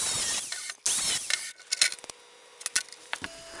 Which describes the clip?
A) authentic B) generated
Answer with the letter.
A